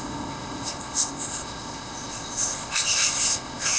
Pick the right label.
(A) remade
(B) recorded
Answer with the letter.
A